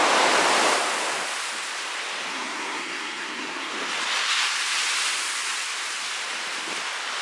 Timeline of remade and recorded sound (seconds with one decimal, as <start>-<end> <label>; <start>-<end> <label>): 0.0-2.3 recorded; 2.3-3.7 remade; 3.7-7.2 recorded